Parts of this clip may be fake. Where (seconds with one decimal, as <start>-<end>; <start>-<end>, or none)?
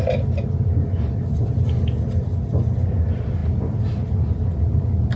none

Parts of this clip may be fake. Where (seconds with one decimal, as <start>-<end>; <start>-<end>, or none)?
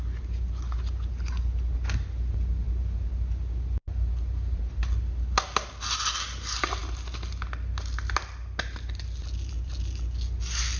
none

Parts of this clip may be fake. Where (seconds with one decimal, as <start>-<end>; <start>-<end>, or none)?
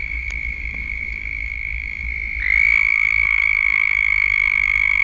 0.0-2.1; 2.8-5.0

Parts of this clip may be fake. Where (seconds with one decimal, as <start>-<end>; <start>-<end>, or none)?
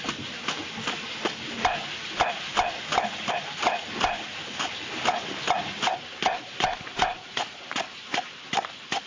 none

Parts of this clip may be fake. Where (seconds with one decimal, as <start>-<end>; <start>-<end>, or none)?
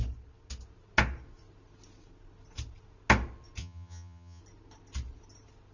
3.6-4.4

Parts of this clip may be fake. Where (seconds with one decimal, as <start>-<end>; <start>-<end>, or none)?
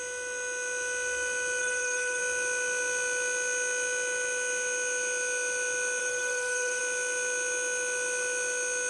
1.6-2.2; 6.0-6.8